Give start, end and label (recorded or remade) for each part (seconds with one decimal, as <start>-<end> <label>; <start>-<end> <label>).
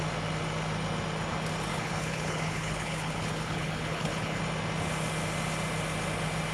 0.0-1.7 recorded; 1.7-4.4 remade; 4.4-6.5 recorded